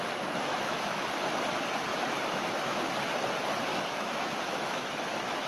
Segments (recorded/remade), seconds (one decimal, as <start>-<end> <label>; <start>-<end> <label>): 0.0-0.5 recorded; 0.5-1.1 remade; 1.1-1.9 recorded; 1.9-2.9 remade; 2.9-3.7 recorded; 3.7-5.5 remade